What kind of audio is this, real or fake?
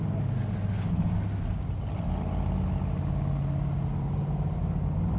real